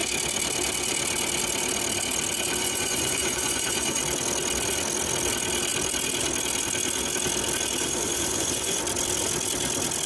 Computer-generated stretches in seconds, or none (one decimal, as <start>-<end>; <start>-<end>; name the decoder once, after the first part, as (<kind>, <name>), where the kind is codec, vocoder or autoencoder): 2.6-4.0 (vocoder, Vocos); 7.8-8.8